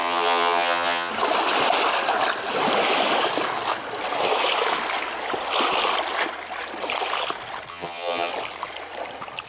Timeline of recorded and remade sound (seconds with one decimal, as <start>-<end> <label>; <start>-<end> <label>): 0.0-1.1 remade; 1.1-7.7 recorded; 7.7-8.3 remade; 8.3-9.5 recorded